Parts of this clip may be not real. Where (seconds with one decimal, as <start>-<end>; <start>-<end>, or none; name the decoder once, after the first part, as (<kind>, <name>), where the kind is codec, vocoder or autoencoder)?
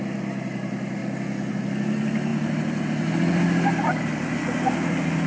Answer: none